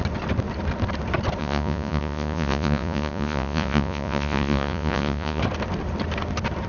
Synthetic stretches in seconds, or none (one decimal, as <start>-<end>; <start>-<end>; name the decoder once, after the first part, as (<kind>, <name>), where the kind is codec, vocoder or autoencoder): 1.4-5.4 (vocoder, Vocos)